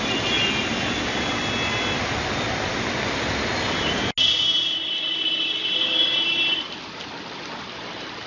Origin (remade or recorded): recorded